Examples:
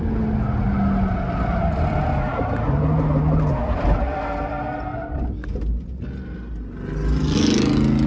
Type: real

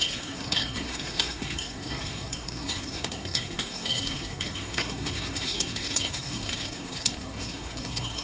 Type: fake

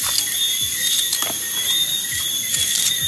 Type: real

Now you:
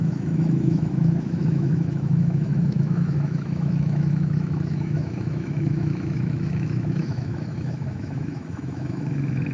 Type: fake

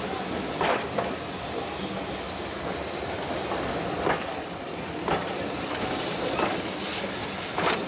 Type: real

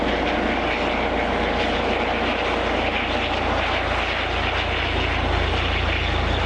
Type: real